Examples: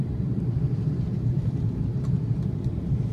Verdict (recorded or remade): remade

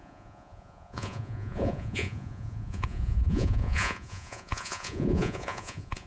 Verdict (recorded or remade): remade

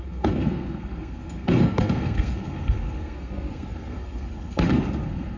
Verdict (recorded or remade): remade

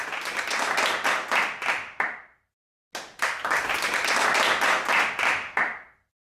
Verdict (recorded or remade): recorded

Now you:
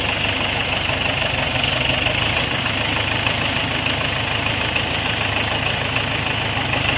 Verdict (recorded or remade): recorded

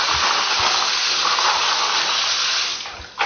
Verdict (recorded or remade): recorded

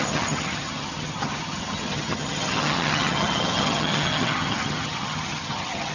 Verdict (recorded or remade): remade